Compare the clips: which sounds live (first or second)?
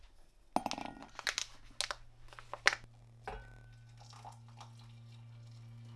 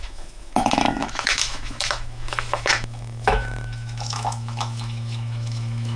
first